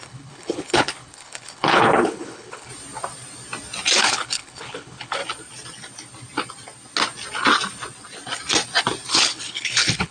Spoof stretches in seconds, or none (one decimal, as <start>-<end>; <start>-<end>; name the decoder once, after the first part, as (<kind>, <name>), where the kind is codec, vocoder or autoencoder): 0.0-2.7 (codec, HILCodec); 4.0-5.2; 9.1-10.1